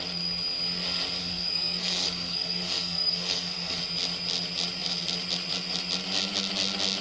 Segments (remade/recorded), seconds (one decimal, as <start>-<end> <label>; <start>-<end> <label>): 0.0-1.2 recorded; 1.2-3.8 remade; 3.8-7.0 recorded